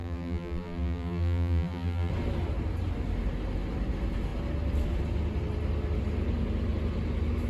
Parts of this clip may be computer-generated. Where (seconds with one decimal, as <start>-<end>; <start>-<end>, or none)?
0.0-2.1